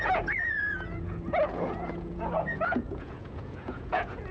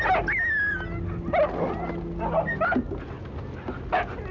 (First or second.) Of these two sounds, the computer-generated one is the first